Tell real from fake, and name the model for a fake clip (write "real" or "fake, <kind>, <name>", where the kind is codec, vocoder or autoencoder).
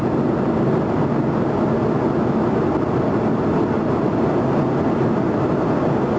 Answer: real